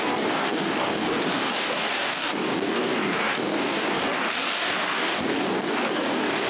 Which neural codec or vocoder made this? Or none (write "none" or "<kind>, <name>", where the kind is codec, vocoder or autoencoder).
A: codec, DAC